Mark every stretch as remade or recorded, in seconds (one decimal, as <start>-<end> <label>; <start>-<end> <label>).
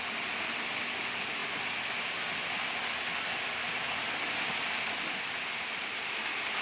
0.0-6.6 recorded